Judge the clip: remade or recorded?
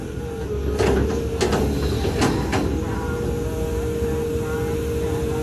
recorded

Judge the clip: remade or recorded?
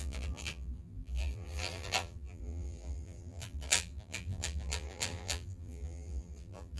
remade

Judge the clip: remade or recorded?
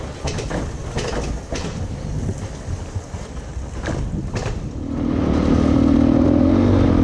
recorded